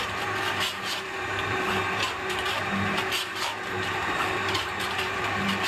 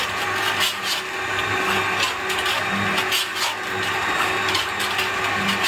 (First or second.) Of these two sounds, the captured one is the second